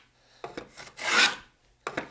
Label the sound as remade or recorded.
recorded